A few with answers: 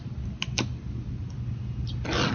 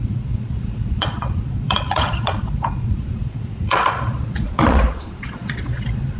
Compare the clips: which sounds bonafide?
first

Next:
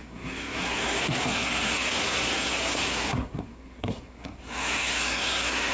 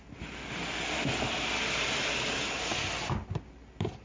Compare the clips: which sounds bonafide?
second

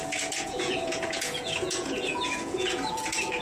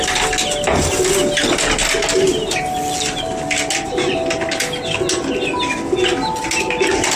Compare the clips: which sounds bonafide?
second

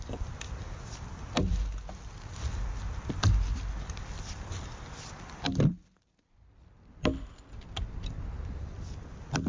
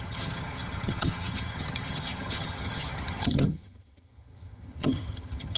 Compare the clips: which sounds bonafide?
first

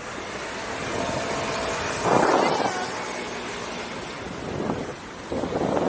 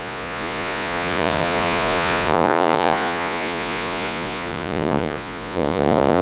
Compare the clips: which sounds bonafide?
first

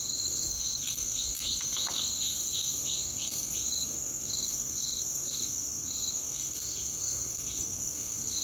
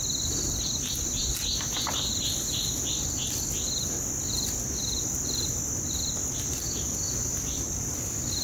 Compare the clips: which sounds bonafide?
second